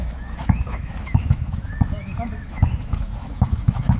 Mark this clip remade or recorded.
remade